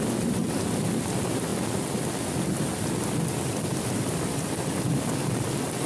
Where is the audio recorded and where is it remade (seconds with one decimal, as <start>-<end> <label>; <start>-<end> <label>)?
0.0-5.9 recorded